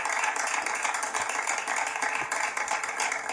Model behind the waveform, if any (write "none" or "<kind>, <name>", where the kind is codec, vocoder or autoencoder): none